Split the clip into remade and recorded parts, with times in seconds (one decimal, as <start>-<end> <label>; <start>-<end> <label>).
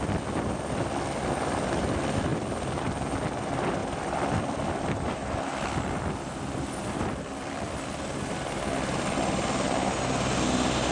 0.0-2.3 recorded; 2.3-2.8 remade; 2.8-3.8 recorded; 3.8-9.0 remade; 9.0-10.9 recorded